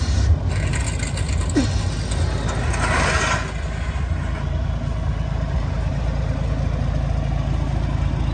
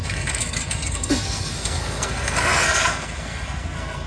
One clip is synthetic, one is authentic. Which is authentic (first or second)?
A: first